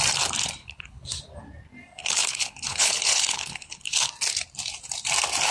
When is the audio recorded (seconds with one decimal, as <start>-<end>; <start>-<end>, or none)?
0.0-0.6; 1.2-2.0; 4.1-5.5